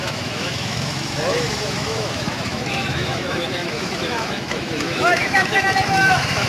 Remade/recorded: remade